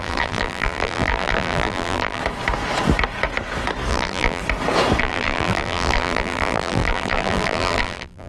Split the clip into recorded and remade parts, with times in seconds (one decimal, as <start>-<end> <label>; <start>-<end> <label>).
0.0-2.2 remade; 2.2-3.9 recorded; 3.9-4.4 remade; 4.4-5.0 recorded; 5.0-8.3 remade